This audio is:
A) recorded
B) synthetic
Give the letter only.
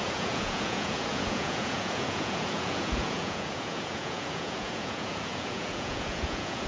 B